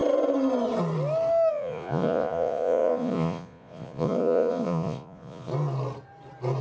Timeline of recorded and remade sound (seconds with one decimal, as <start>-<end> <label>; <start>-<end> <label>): 0.0-1.5 recorded; 1.5-5.5 remade; 5.5-6.6 recorded